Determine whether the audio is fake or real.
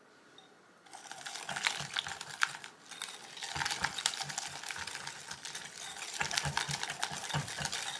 real